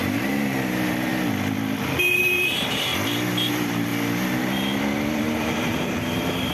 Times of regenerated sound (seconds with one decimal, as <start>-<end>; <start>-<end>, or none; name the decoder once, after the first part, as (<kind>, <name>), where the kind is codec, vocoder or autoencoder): 0.0-1.1 (vocoder, BigVGAN v2); 2.2-2.9; 3.5-3.9; 5.1-6.5